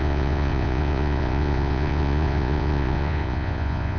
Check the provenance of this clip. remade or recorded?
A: remade